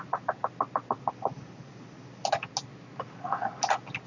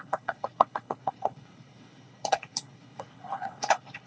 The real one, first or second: first